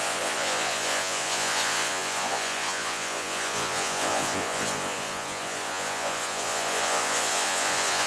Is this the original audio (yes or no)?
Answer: no